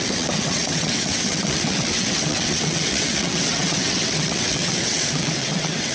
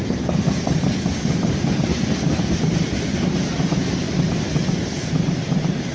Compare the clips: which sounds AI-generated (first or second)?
first